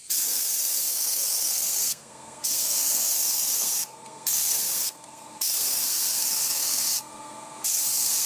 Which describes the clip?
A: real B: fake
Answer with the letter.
B